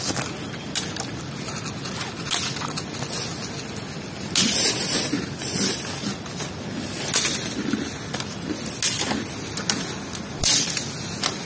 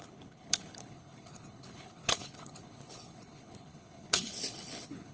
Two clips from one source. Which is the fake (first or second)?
second